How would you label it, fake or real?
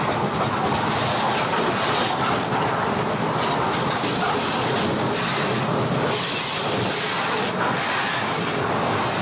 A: real